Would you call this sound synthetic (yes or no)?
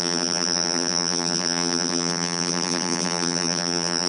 yes